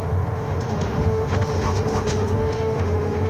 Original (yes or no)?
no